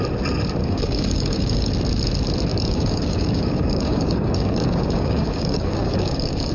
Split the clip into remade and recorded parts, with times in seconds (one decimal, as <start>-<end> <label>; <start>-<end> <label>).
0.0-0.6 recorded; 0.6-1.7 remade; 1.7-2.5 recorded; 2.5-6.5 remade